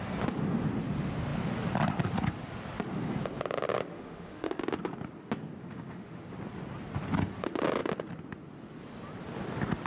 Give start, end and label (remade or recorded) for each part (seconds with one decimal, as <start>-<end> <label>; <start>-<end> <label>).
0.0-3.9 recorded; 3.9-4.6 remade; 4.6-5.6 recorded; 5.6-6.2 remade; 6.2-9.9 recorded